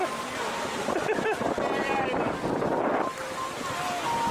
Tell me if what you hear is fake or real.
real